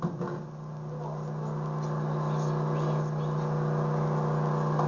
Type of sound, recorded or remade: recorded